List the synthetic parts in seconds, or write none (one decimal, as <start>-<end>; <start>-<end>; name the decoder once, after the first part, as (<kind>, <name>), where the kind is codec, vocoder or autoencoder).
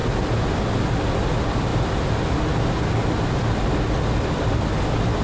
none